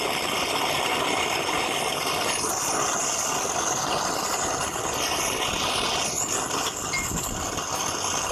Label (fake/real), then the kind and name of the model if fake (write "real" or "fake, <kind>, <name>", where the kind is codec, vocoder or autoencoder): real